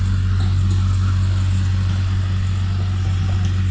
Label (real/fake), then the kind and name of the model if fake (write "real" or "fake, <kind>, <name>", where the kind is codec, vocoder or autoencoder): real